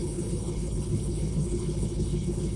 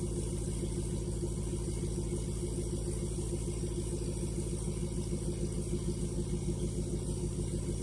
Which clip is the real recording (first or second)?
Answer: second